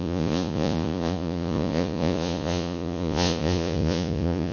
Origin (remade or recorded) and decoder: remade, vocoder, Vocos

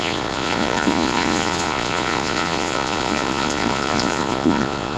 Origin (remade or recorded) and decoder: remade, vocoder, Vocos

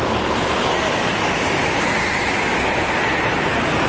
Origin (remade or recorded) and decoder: recorded